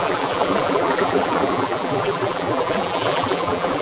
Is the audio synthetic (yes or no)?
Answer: yes